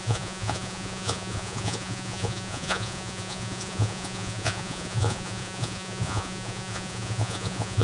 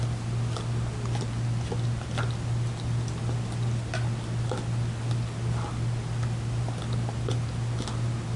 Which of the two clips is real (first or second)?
second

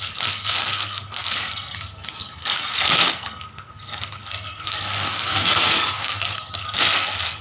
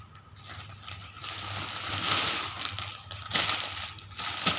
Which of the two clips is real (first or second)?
second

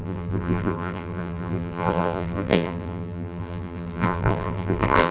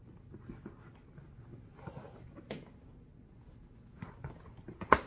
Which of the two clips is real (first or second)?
second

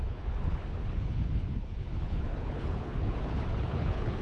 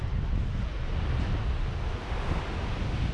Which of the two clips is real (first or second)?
second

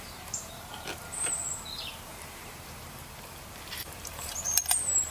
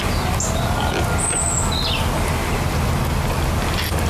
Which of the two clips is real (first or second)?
second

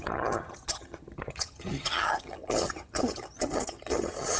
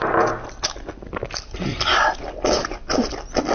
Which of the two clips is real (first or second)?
second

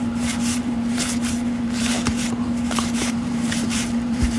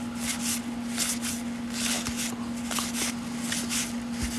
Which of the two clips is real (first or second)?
second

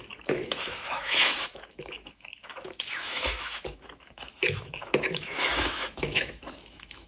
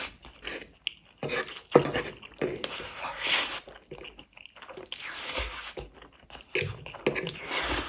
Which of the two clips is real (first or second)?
second